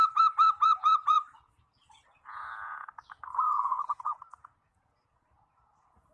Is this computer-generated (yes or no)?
yes